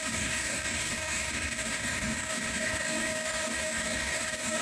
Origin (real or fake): fake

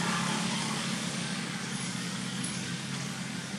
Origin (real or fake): fake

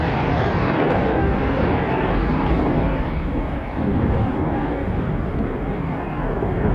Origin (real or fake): fake